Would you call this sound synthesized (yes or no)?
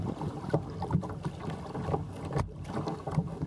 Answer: no